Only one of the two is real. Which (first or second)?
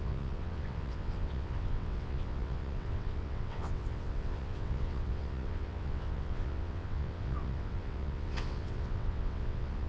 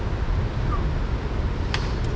second